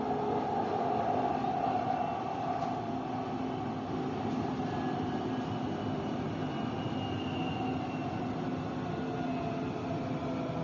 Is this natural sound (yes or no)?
yes